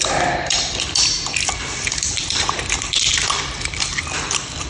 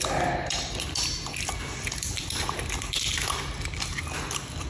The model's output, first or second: first